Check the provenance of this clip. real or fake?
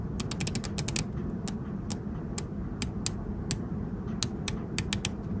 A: real